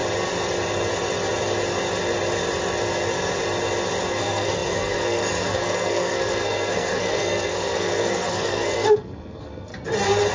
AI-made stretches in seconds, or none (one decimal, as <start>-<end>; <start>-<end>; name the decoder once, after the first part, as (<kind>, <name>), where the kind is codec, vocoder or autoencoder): 4.1-9.7 (codec, SNAC)